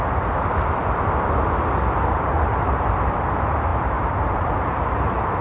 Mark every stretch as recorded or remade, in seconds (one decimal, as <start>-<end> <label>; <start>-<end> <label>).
0.0-0.8 remade; 0.8-2.5 recorded; 2.5-5.4 remade